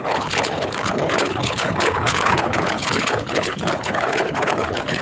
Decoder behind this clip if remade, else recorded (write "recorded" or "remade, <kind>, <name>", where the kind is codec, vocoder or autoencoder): remade, codec, HILCodec